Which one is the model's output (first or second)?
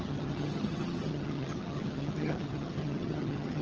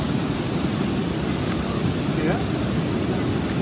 first